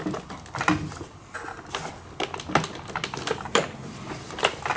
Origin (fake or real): real